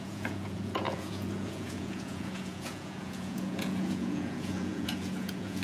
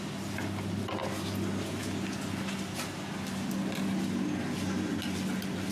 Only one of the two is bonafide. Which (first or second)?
second